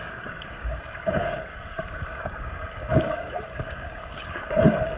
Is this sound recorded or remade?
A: remade